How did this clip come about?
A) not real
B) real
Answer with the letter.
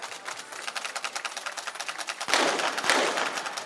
B